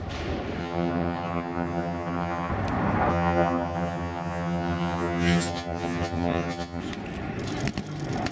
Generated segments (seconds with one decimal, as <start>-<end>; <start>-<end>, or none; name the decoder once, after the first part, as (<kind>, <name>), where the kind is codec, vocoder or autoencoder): 0.6-2.5 (vocoder, HiFi-GAN); 3.1-6.8